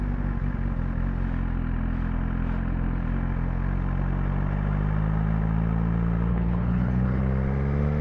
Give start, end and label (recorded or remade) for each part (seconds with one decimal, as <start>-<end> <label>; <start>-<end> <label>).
0.0-6.3 recorded; 6.3-7.2 remade; 7.2-8.0 recorded